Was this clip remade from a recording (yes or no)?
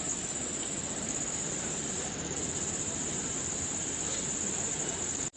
yes